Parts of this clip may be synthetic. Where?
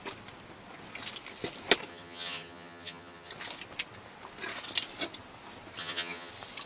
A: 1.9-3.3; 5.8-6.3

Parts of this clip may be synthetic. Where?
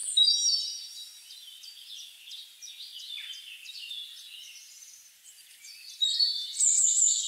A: none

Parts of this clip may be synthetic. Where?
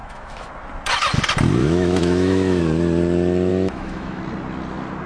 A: 0.0-0.5; 1.6-2.6; 3.5-4.2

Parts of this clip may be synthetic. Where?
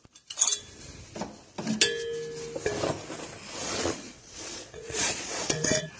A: 3.6-6.0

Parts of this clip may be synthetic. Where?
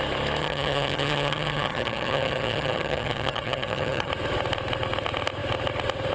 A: 0.4-4.1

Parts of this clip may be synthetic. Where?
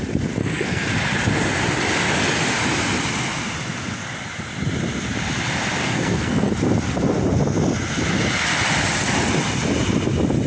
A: 0.4-0.9; 5.8-6.5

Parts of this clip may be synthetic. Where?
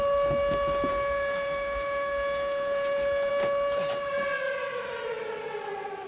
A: 0.9-3.3